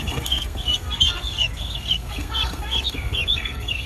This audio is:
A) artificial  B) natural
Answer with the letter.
A